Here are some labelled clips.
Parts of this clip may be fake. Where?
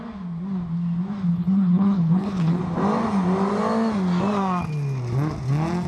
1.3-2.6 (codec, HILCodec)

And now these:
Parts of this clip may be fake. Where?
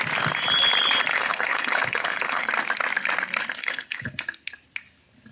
1.1-2.5 (codec, HILCodec); 3.6-4.1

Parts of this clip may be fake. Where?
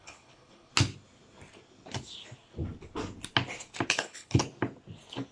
0.0-0.7 (codec, HILCodec); 3.9-4.4